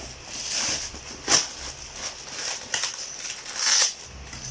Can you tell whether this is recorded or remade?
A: recorded